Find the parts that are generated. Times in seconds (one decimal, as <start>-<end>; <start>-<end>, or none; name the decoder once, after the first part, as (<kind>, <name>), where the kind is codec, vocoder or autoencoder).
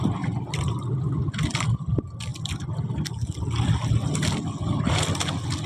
none